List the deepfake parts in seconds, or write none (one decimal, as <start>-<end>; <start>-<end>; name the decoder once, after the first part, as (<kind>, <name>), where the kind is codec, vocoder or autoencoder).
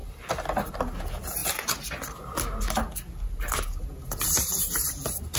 none